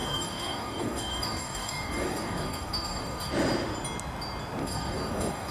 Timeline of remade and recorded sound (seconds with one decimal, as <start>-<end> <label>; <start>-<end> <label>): 0.0-3.3 remade; 3.3-4.6 recorded; 4.6-5.5 remade